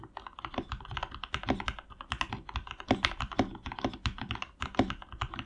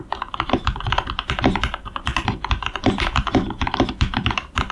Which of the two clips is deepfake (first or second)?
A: second